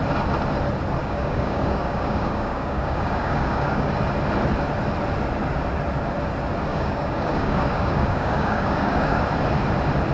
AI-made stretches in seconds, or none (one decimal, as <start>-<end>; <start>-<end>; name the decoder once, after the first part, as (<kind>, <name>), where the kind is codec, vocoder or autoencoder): 1.0-3.9 (codec, DAC); 6.7-9.2